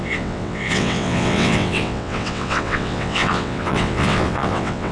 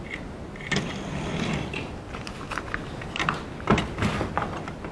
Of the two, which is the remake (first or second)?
first